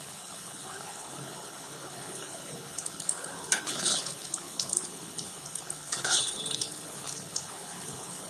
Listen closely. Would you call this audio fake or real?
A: fake